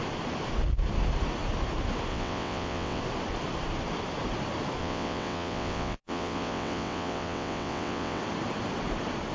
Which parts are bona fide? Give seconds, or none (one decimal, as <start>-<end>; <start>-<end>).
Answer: 0.0-2.1; 3.0-4.8; 8.2-9.3

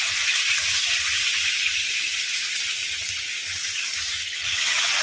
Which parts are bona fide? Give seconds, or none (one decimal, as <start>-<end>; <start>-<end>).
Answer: 0.0-4.4

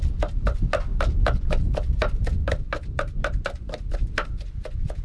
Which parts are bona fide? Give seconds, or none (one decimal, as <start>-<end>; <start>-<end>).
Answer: 0.0-5.0